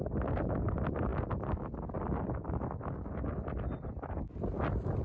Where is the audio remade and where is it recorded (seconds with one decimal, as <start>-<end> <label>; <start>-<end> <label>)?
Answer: 0.0-5.0 recorded